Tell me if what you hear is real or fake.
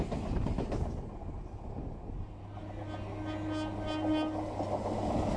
real